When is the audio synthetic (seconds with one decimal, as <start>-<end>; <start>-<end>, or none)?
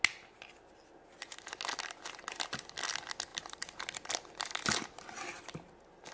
none